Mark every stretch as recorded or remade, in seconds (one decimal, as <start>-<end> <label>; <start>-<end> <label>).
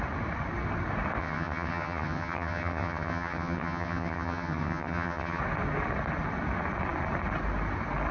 0.0-1.2 recorded; 1.2-5.4 remade; 5.4-8.1 recorded